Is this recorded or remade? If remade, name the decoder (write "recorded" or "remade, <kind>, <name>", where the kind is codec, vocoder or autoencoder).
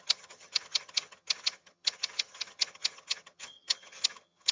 remade, vocoder, HiFi-GAN